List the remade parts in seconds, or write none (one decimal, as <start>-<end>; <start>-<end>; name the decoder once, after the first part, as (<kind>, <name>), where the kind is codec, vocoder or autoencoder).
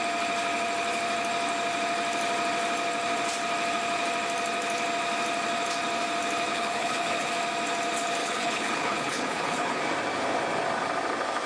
6.5-7.3 (codec, HILCodec); 8.2-9.8